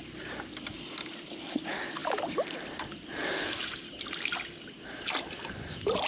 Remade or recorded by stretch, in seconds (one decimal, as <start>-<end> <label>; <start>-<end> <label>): 0.0-2.0 remade; 2.0-5.6 recorded; 5.6-6.1 remade

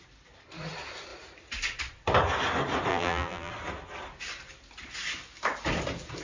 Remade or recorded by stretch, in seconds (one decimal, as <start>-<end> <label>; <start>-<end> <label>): 0.0-2.9 recorded; 2.9-3.5 remade; 3.5-6.2 recorded

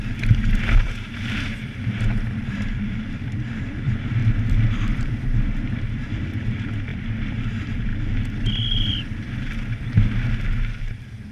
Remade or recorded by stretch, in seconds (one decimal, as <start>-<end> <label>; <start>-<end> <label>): 0.0-4.2 remade; 4.2-4.9 recorded; 4.9-7.9 remade; 7.9-10.8 recorded; 10.8-11.3 remade

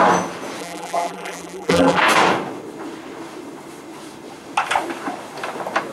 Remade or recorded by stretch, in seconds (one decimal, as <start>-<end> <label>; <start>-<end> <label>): 0.0-0.6 recorded; 0.6-2.0 remade; 2.0-5.9 recorded